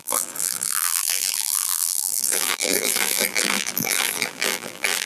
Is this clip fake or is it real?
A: fake